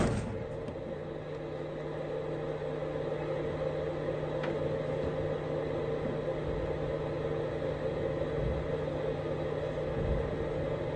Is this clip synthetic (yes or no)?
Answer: no